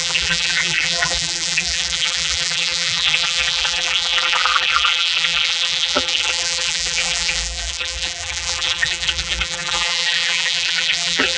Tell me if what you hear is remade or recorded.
remade